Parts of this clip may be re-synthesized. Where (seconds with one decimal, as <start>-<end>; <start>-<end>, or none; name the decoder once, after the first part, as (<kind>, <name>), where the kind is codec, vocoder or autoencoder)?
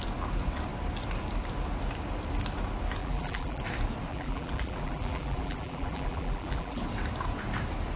3.0-3.6 (vocoder, BigVGAN v2); 4.1-6.8